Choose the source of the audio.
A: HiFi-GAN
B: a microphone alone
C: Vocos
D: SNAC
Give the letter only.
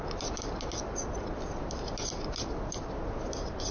B